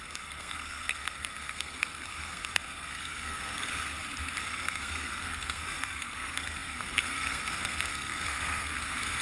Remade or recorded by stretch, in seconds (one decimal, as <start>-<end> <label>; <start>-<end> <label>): 0.0-3.7 remade; 3.7-4.4 recorded; 4.4-9.2 remade